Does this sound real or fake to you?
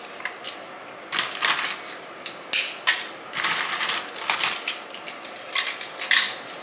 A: real